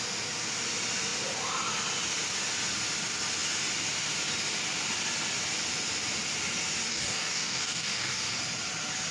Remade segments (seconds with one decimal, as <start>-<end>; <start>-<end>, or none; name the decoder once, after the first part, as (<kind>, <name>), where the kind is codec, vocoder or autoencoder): 6.9-8.4 (codec, DAC)

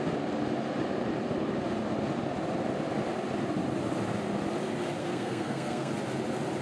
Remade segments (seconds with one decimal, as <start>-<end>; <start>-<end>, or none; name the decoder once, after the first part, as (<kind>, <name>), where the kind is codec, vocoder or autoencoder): 5.0-5.9 (codec, SNAC)

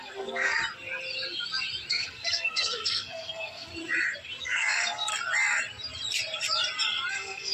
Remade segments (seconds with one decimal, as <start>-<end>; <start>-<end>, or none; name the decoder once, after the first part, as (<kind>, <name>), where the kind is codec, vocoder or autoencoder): 0.0-0.6 (codec, SNAC); 1.9-3.7; 4.4-5.1; 7.1-7.5

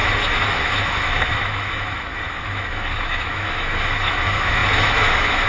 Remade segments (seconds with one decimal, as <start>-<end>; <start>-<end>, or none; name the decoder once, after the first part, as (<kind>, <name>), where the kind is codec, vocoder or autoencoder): 0.0-5.5 (autoencoder, DAC-VAE)

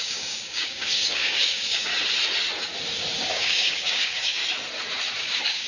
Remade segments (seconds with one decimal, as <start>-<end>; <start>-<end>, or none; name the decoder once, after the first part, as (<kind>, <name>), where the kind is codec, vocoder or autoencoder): 0.0-1.9 (codec, DAC); 3.3-4.4; 5.2-5.7

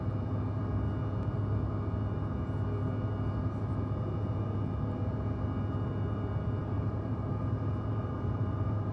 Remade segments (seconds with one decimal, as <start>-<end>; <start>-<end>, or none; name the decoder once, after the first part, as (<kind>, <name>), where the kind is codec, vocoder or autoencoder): 6.6-8.9 (vocoder, BigVGAN v2)